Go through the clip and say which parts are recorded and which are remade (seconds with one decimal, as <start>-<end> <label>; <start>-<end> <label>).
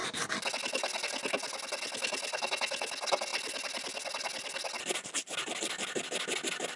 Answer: 0.0-6.8 recorded